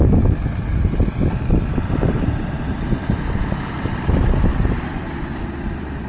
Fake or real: fake